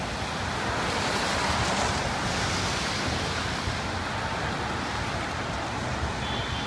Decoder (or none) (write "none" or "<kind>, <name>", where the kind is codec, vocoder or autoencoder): none